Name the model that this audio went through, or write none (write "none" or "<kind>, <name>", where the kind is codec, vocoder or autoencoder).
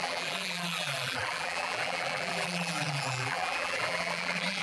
vocoder, BigVGAN v2